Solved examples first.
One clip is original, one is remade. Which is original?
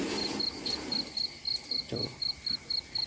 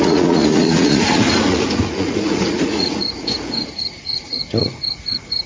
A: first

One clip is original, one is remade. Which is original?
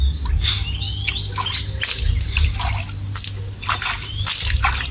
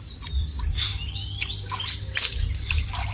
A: first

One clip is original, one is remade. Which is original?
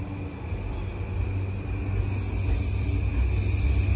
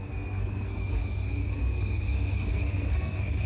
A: first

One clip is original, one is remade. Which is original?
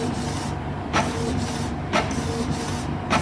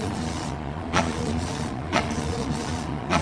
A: first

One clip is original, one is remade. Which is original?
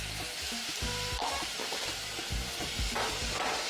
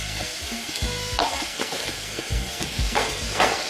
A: first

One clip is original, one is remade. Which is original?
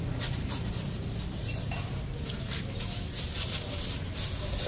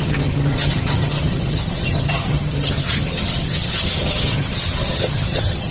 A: first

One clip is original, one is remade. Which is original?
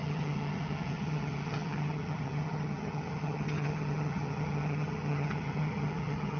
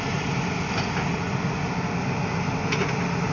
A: second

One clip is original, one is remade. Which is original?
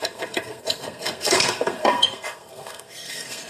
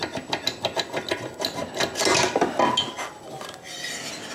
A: second